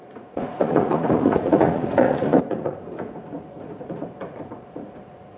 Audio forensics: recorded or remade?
remade